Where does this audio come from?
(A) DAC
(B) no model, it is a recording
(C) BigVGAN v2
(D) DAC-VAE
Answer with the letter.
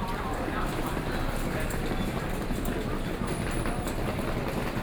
B